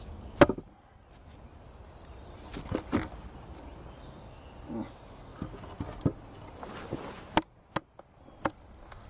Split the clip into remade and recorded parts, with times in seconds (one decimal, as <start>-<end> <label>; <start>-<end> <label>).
0.0-9.1 recorded